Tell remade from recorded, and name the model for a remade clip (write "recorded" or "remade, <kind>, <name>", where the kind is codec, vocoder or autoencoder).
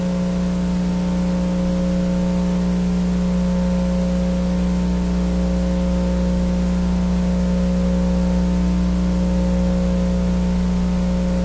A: recorded